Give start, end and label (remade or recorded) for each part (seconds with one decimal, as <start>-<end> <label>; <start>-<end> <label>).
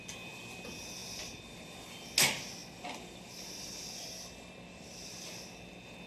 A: 0.0-6.1 recorded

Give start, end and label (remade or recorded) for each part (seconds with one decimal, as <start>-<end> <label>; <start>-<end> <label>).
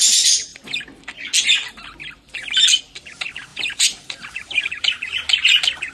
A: 0.0-3.5 recorded; 3.5-4.8 remade; 4.8-5.9 recorded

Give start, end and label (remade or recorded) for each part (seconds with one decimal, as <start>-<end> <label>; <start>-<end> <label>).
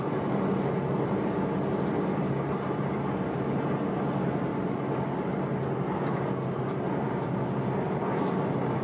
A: 0.0-8.8 recorded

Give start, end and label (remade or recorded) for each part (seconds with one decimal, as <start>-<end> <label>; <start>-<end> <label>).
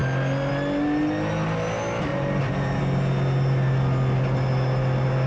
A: 0.0-2.1 recorded; 2.1-2.8 remade; 2.8-5.3 recorded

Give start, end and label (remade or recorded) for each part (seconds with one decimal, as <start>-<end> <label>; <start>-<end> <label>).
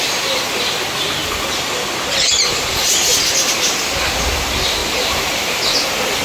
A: 0.0-1.2 recorded; 1.2-3.5 remade; 3.5-4.8 recorded; 4.8-5.7 remade; 5.7-6.2 recorded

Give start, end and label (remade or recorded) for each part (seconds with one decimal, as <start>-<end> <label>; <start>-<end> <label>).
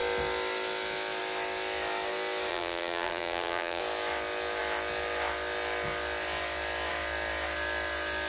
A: 0.0-2.5 recorded; 2.5-3.8 remade; 3.8-8.3 recorded